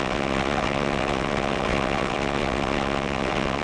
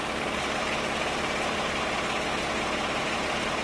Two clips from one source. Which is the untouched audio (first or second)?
second